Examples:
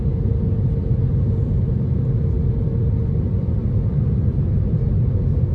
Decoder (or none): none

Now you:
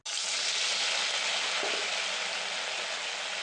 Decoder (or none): none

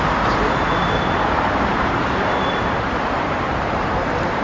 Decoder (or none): vocoder, BigVGAN v2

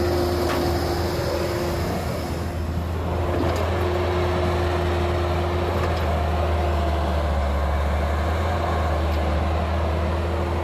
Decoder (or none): none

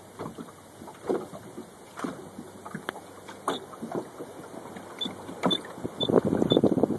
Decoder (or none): none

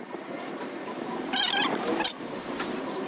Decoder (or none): vocoder, BigVGAN v2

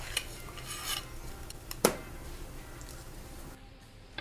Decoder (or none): vocoder, BigVGAN v2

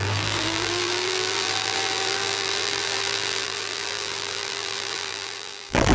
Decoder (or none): vocoder, BigVGAN v2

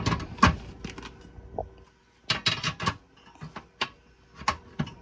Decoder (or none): none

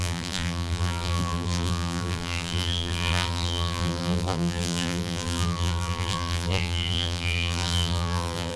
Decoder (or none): vocoder, BigVGAN v2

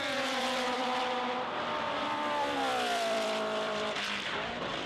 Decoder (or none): vocoder, BigVGAN v2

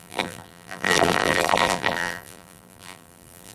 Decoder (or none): vocoder, BigVGAN v2